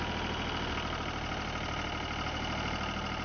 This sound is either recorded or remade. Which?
recorded